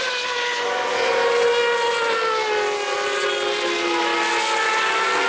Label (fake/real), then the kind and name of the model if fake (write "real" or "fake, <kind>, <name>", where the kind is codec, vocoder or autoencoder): real